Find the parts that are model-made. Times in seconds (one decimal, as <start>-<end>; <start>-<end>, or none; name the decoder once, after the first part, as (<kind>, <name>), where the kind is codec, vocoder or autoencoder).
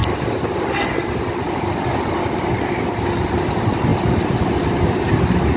none